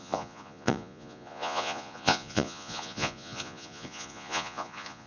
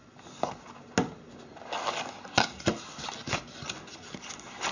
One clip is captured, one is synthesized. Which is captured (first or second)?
second